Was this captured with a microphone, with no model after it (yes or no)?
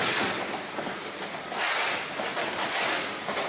yes